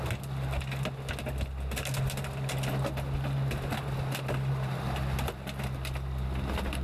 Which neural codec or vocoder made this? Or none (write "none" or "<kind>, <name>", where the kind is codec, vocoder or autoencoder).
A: none